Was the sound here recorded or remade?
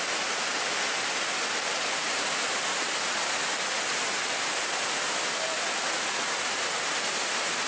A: recorded